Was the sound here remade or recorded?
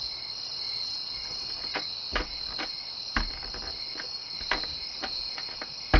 recorded